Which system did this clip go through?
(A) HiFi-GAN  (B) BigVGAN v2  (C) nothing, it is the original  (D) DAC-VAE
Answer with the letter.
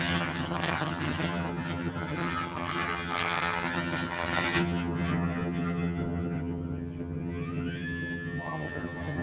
A